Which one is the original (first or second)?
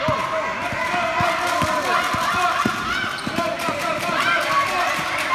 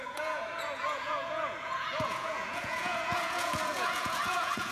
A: first